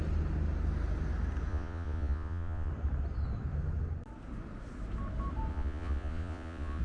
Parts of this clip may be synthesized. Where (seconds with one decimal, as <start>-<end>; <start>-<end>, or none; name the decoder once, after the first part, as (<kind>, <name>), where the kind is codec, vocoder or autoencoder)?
1.5-2.7 (vocoder, Vocos); 5.5-6.8